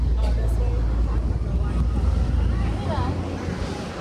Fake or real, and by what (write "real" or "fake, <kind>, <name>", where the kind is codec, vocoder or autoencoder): real